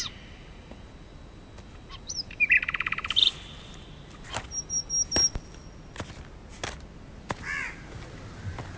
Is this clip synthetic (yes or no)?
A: no